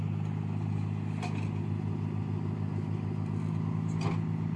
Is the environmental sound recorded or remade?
recorded